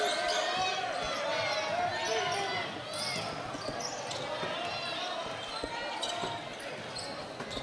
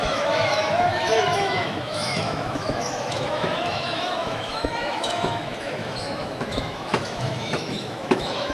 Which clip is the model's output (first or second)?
second